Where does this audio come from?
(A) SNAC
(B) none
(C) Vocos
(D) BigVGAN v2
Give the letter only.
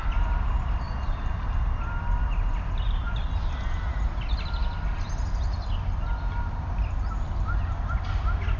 B